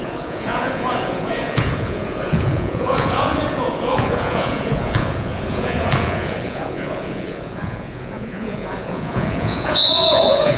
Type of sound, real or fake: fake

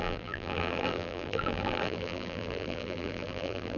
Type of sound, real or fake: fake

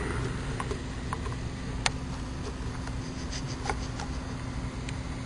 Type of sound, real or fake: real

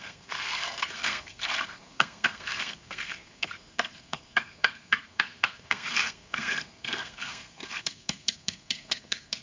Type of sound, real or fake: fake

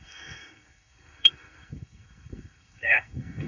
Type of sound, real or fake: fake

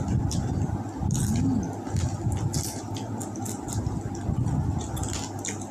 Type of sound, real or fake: real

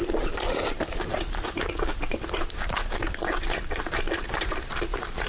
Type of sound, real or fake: fake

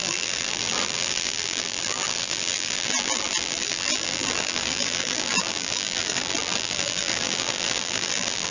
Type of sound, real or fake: fake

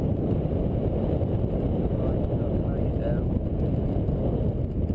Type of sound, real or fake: real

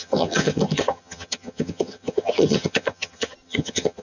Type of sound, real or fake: fake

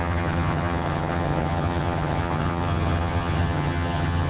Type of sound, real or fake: fake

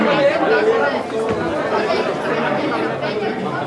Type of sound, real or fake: real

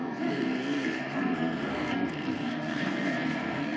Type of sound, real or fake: fake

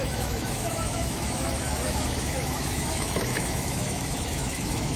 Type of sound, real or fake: fake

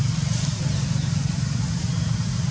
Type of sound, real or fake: real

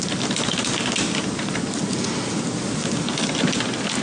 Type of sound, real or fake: real